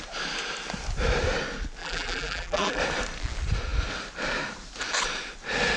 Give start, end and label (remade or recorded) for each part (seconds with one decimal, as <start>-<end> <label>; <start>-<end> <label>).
0.0-1.8 recorded; 1.8-2.8 remade; 2.8-5.8 recorded